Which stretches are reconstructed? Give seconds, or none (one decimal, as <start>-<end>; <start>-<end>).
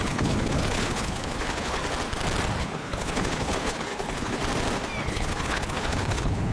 0.0-1.8; 2.6-4.4; 5.0-6.5